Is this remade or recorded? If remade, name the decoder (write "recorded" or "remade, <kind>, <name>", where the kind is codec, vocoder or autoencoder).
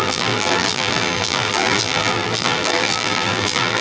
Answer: remade, vocoder, BigVGAN v2